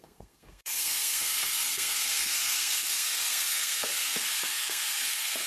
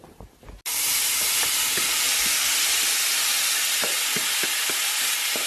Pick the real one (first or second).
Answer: second